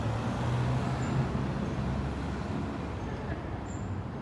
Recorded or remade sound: recorded